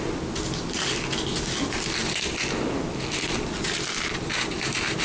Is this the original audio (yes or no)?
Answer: yes